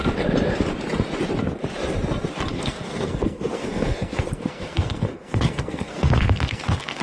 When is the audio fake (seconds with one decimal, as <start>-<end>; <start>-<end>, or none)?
2.5-7.0